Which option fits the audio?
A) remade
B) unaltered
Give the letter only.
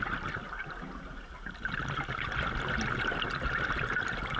B